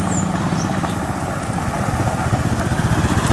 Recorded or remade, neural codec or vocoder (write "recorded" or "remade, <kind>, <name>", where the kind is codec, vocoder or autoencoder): recorded